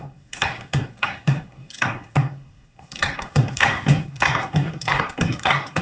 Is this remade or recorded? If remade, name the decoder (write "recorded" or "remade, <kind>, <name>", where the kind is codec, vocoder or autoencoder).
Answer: remade, codec, SNAC